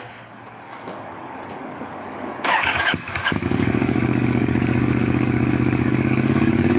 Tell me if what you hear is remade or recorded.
remade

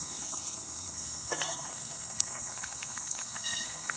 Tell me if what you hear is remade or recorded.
remade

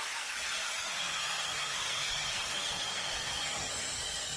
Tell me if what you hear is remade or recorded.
remade